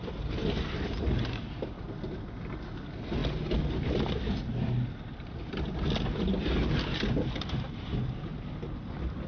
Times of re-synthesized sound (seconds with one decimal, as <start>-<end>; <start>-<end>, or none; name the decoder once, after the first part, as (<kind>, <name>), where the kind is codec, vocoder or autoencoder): none

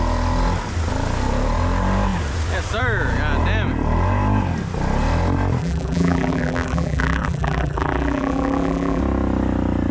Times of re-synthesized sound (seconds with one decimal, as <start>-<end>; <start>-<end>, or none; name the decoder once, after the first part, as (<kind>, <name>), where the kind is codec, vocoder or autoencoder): 5.6-9.0 (vocoder, BigVGAN v2)

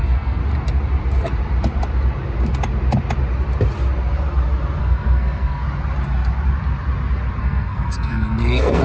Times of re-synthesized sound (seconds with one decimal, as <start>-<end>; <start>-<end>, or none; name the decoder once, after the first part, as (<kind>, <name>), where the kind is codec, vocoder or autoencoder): 0.0-0.4 (codec, SNAC); 4.8-5.6; 7.4-8.8